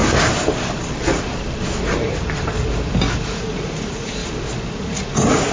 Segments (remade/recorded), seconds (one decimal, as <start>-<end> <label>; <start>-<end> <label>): 0.0-3.3 recorded; 3.3-4.2 remade; 4.2-4.7 recorded; 4.7-5.5 remade